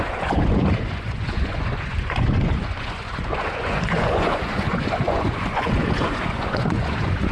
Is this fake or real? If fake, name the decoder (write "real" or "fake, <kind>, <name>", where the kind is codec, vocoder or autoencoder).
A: fake, vocoder, Vocos